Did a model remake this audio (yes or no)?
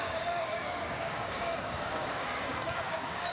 yes